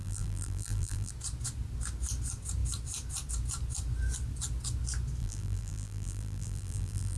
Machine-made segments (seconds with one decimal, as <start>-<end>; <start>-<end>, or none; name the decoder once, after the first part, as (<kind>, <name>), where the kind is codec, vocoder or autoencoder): 0.0-1.1 (vocoder, BigVGAN v2); 5.2-7.2